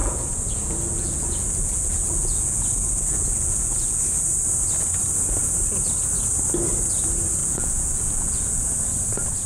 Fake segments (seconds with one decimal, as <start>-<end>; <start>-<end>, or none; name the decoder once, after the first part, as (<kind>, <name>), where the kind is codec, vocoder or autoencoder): 0.0-4.0 (vocoder, Vocos); 7.4-8.6